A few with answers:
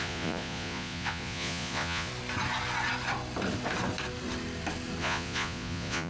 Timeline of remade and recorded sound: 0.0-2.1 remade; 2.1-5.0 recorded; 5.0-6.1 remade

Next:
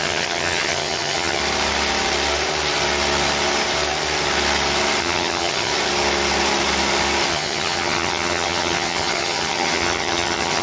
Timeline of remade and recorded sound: 0.0-1.4 remade; 1.4-5.0 recorded; 5.0-5.7 remade; 5.7-7.3 recorded; 7.3-10.6 remade

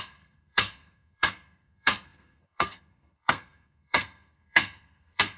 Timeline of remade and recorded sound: 0.0-5.4 remade

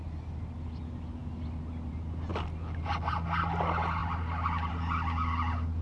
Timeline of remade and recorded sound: 0.0-5.8 recorded

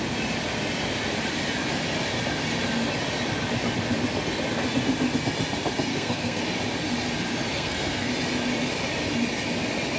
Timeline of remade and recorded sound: 0.0-5.9 recorded; 5.9-6.4 remade; 6.4-7.5 recorded; 7.5-8.1 remade; 8.1-10.0 recorded

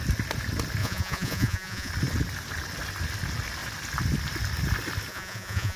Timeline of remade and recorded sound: 0.0-0.8 recorded; 0.8-1.9 remade; 1.9-5.1 recorded; 5.1-5.8 remade

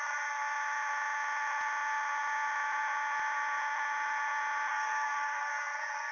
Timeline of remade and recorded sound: 0.0-4.7 recorded; 4.7-5.5 remade; 5.5-6.1 recorded

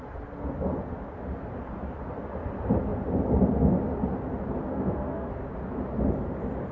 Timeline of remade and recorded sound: 0.0-4.7 recorded; 4.7-5.3 remade; 5.3-6.7 recorded